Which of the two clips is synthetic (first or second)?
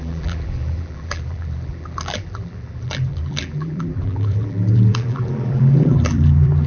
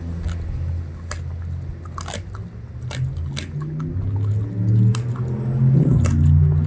first